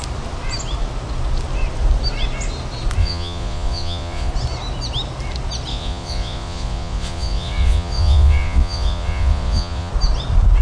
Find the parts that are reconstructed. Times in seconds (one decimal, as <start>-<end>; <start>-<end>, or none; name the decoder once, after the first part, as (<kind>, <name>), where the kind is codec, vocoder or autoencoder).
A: 3.0-4.3 (vocoder, Vocos); 5.7-9.9